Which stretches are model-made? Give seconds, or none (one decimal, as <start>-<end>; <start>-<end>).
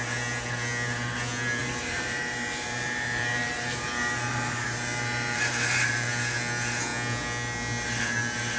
1.6-6.1